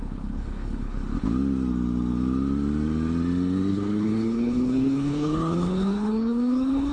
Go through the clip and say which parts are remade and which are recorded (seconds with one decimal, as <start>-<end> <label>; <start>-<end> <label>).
0.0-1.0 remade; 1.0-3.7 recorded; 3.7-6.9 remade